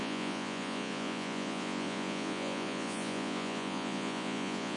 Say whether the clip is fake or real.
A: fake